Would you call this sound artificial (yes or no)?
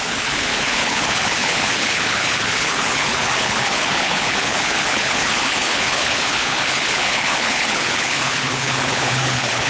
yes